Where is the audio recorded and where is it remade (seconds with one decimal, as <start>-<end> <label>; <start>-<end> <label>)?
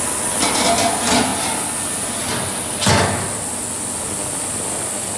0.0-5.2 recorded